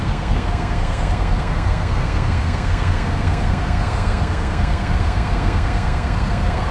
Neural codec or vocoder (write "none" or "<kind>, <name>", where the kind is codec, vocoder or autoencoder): codec, SNAC